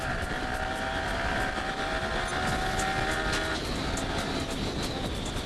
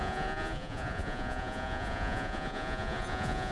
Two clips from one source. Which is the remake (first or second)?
second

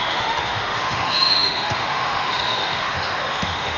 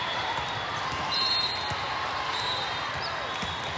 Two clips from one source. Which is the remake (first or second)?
first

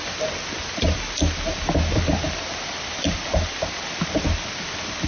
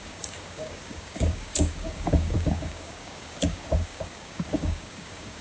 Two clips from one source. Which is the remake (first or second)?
second